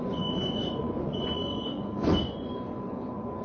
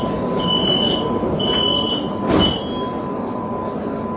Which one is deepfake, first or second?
first